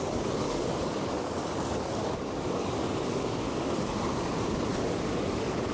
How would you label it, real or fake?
fake